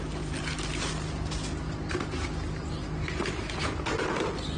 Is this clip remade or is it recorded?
recorded